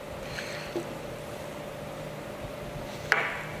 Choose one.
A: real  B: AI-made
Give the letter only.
A